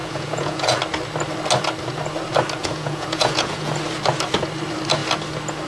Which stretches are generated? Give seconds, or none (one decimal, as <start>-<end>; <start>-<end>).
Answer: 0.0-0.8; 2.6-3.7